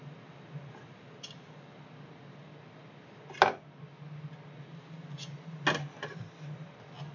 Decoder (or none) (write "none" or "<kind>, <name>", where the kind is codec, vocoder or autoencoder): none